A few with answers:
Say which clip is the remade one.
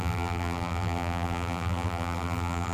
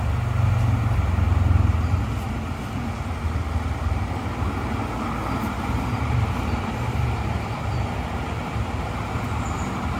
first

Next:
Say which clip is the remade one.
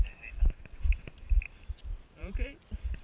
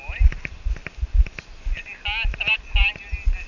first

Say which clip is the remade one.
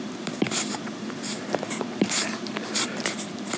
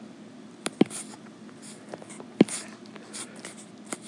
first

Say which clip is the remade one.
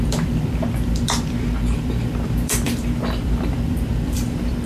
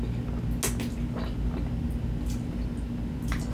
first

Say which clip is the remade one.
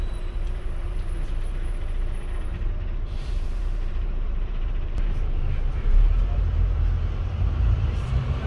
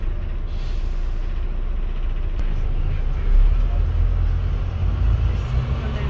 first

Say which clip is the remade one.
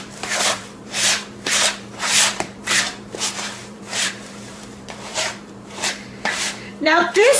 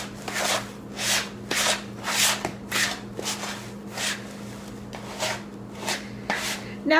first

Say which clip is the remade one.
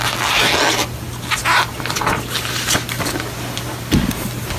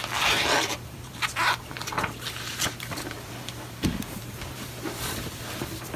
second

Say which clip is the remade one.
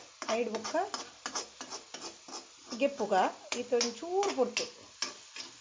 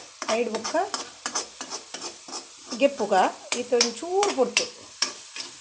second